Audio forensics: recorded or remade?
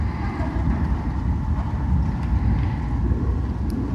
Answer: recorded